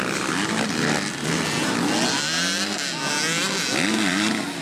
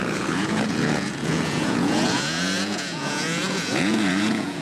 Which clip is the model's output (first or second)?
second